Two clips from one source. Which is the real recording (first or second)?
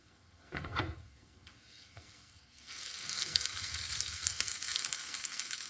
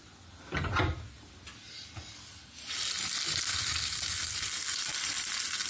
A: second